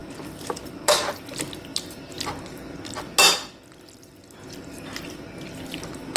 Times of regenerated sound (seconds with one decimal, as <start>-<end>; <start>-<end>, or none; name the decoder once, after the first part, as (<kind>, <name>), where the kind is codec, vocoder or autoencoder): none